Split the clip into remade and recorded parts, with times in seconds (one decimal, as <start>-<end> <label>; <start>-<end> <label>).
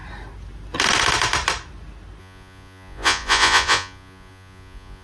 0.0-2.2 recorded; 2.2-5.0 remade